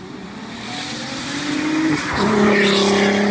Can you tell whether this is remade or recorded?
recorded